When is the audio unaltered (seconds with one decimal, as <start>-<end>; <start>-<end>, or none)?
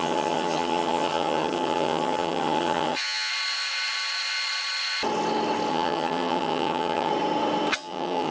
3.3-5.7; 7.1-7.7